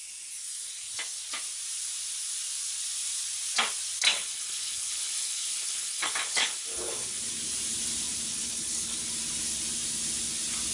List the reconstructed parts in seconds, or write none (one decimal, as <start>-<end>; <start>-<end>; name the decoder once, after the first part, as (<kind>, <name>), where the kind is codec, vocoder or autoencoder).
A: 4.1-7.2 (codec, HILCodec); 8.3-9.0